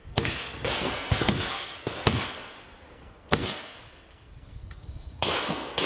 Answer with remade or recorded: remade